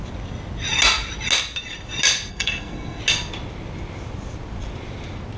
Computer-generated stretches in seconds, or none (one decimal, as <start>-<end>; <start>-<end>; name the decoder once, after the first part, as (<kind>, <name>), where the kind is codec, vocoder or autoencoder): 2.3-3.0 (codec, SNAC)